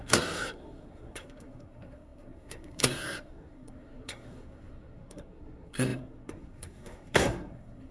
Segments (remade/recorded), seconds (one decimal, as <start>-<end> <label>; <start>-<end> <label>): 0.0-7.9 remade